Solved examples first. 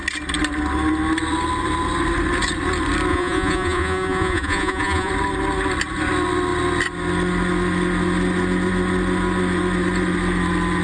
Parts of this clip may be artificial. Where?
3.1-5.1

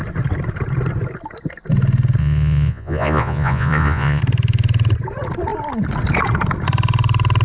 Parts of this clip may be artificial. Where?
2.2-4.2

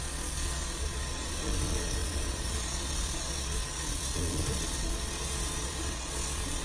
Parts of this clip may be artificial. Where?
0.0-6.6

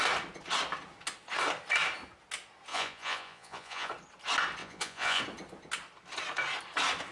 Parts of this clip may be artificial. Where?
2.7-3.9; 4.6-5.2

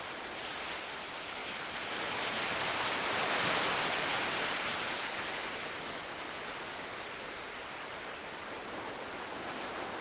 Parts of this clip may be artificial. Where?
none

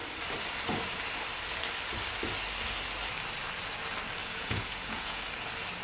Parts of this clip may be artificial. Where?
4.2-5.2

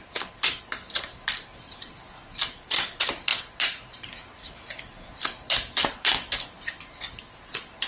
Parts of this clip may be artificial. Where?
none